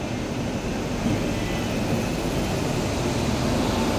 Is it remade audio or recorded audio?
recorded